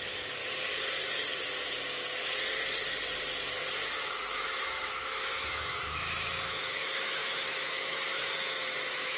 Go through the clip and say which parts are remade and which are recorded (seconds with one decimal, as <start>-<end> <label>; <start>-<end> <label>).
0.0-0.4 remade; 0.4-4.1 recorded; 4.1-9.2 remade

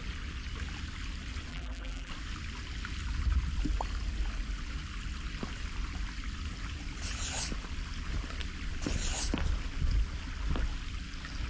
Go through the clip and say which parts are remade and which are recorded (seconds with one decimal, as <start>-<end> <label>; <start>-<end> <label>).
0.0-1.5 recorded; 1.5-2.1 remade; 2.1-11.5 recorded

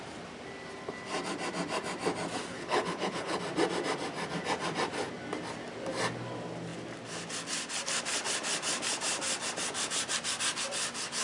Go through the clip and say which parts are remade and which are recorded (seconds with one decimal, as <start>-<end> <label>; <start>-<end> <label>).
0.0-2.5 recorded; 2.5-3.4 remade; 3.4-11.2 recorded

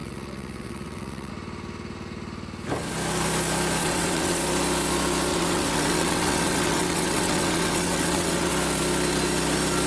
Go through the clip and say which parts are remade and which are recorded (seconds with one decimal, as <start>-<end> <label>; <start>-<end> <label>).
0.0-1.3 remade; 1.3-3.8 recorded; 3.8-4.4 remade; 4.4-5.3 recorded; 5.3-8.5 remade; 8.5-9.9 recorded

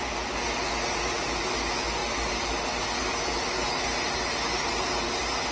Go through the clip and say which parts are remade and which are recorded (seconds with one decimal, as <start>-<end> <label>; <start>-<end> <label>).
0.0-5.5 recorded

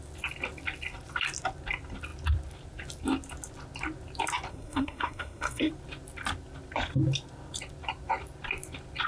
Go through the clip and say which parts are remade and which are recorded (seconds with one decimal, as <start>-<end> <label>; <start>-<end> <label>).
0.0-4.5 recorded; 4.5-5.7 remade; 5.7-9.1 recorded